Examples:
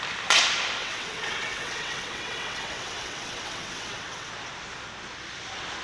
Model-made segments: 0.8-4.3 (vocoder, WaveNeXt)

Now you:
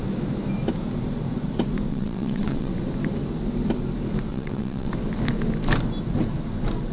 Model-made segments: 1.9-2.7 (vocoder, WaveNeXt); 4.3-4.9

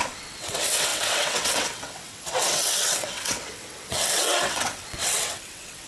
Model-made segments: 0.0-5.9 (vocoder, WaveNeXt)

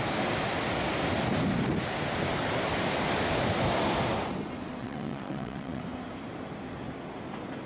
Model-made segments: 4.8-5.8 (vocoder, WaveNeXt)

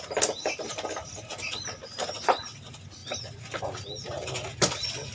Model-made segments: none